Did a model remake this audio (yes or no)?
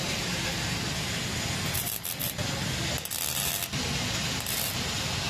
no